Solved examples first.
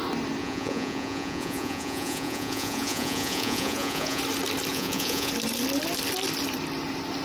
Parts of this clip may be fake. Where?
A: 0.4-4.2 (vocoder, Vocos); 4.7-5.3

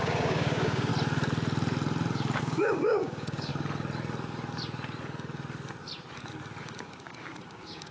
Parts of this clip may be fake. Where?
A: 0.0-0.9 (codec, DAC); 2.4-3.5; 6.6-7.9

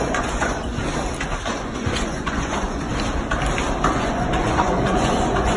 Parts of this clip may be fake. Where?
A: 0.0-0.8 (vocoder, Vocos); 1.6-2.9; 3.9-5.6